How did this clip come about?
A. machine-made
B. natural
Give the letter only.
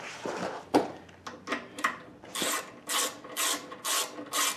B